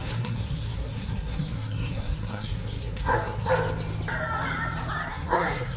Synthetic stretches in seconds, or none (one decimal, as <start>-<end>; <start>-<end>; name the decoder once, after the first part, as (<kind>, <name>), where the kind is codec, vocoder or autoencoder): 0.0-3.5 (codec, SNAC); 5.1-5.8